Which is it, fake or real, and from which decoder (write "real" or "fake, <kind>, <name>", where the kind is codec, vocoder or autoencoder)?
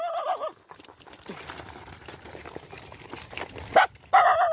real